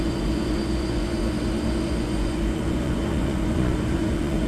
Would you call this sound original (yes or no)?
no